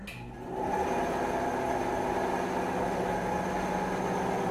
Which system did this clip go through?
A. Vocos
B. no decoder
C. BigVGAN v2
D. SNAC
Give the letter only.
B